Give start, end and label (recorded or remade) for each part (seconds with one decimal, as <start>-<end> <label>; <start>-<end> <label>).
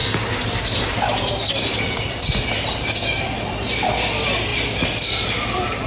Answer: 0.0-5.9 recorded